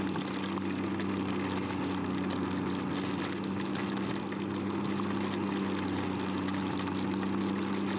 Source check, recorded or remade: recorded